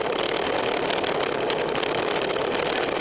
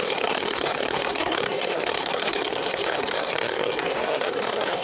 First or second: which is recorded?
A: first